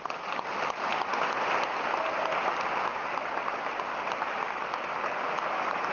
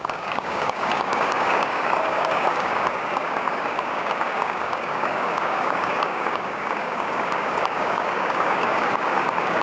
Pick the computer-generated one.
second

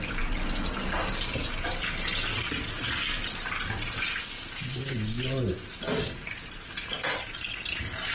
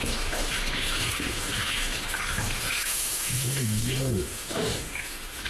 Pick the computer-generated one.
second